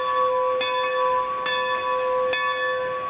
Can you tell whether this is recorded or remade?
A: recorded